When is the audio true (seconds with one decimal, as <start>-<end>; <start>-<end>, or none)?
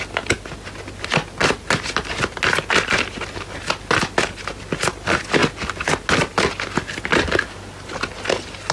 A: 0.0-8.7